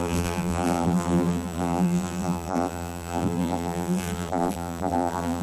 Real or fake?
fake